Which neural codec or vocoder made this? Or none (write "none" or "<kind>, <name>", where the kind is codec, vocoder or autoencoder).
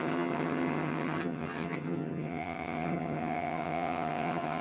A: vocoder, HiFi-GAN